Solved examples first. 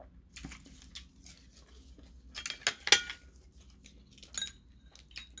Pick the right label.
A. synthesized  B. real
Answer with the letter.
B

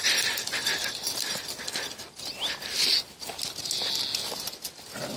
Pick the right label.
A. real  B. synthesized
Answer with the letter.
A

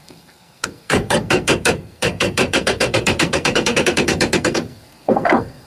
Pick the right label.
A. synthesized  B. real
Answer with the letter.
A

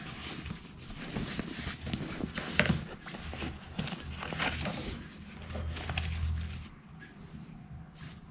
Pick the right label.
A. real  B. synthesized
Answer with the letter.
A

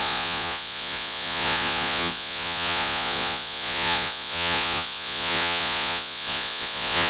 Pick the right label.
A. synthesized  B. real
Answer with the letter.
A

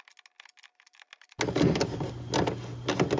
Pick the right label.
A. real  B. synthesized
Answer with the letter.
A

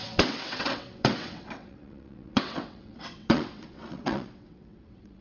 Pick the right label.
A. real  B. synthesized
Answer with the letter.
B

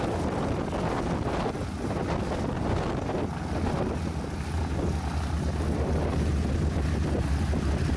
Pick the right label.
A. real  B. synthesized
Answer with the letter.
A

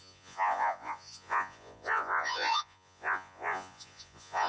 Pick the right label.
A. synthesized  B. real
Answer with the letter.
A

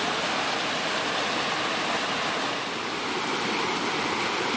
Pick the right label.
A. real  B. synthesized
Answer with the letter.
A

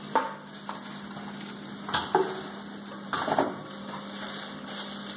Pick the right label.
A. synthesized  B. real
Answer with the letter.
B